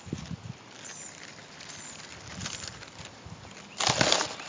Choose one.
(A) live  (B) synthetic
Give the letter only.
A